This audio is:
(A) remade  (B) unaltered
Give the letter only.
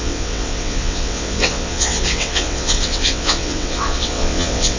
A